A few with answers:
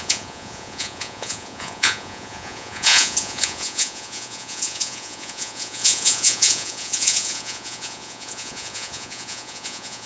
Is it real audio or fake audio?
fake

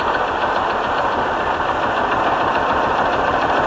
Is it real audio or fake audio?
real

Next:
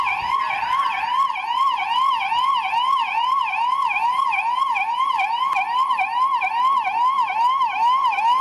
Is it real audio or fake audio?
real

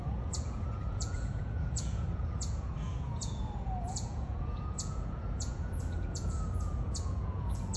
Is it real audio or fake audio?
fake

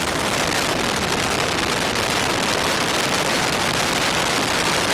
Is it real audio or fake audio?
real